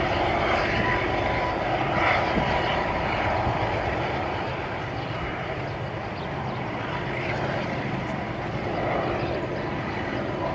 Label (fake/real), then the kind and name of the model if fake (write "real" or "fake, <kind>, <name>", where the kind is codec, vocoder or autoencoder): real